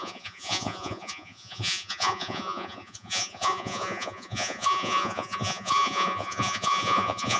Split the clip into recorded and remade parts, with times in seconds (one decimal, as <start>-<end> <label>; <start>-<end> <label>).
0.0-7.4 remade